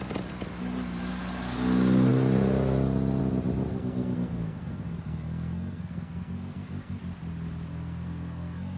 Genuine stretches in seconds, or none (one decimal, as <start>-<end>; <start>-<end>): 0.0-3.7; 7.0-7.7